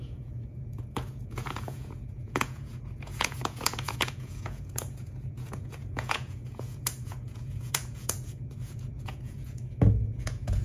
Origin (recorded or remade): remade